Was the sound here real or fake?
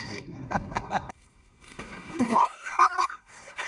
fake